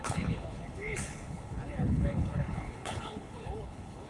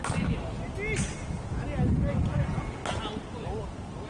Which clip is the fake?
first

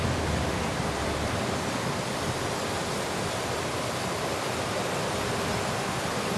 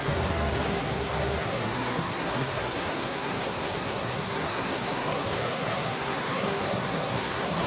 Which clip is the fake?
second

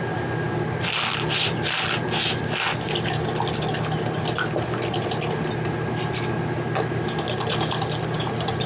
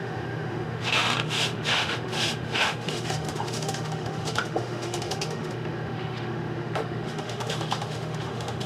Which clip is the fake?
second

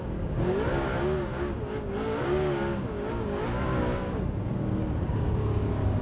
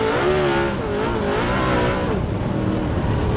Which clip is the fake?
first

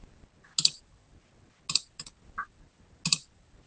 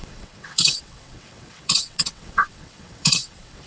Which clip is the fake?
second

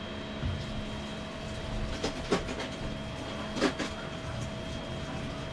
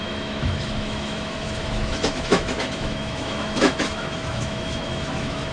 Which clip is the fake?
second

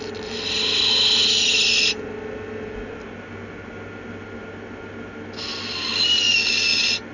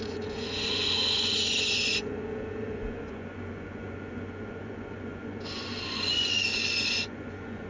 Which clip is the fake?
second